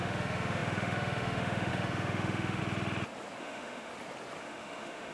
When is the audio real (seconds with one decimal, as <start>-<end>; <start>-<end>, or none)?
2.6-3.4; 3.9-4.4